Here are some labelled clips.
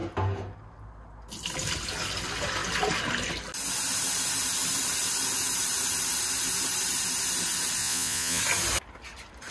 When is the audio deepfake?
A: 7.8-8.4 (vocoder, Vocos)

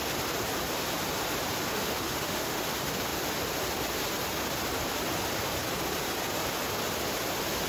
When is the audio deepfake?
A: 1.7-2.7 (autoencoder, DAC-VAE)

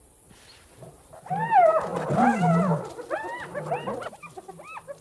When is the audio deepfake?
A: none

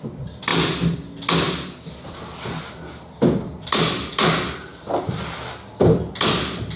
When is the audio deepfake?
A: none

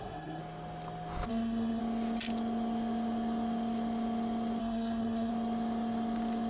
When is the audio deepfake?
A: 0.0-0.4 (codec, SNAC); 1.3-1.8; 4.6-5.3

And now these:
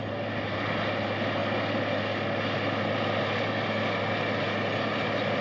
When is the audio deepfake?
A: none